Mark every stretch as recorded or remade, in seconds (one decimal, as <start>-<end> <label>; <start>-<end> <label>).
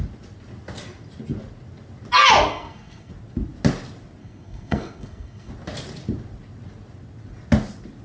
0.0-2.5 recorded; 2.5-3.1 remade; 3.1-4.2 recorded; 4.2-5.5 remade; 5.5-8.0 recorded